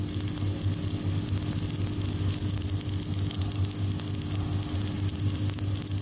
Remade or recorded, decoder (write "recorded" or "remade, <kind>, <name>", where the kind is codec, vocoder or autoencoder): recorded